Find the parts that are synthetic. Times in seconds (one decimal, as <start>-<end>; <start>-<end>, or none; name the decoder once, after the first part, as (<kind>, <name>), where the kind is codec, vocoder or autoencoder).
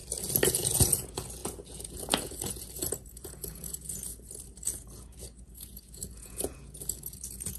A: 0.5-7.6 (vocoder, Vocos)